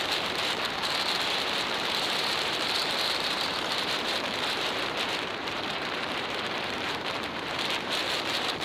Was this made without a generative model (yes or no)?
no